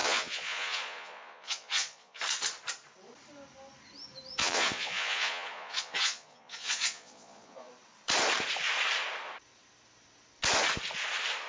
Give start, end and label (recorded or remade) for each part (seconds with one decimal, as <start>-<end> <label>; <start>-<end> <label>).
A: 0.0-2.2 remade; 2.2-4.4 recorded; 4.4-7.7 remade; 7.7-11.5 recorded